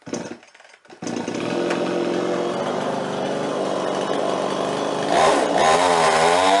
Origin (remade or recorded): recorded